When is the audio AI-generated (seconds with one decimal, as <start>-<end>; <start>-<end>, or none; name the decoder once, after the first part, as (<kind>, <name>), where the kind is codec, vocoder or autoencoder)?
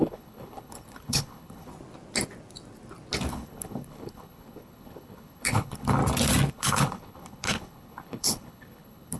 0.0-1.7 (codec, HILCodec); 3.3-6.0; 6.5-9.2